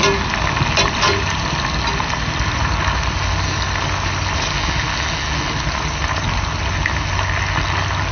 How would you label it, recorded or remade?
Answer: recorded